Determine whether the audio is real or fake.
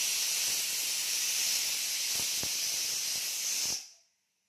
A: real